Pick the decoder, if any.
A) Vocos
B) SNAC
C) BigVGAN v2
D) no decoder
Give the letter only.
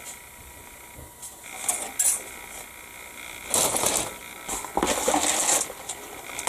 D